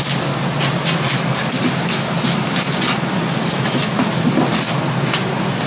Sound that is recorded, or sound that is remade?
recorded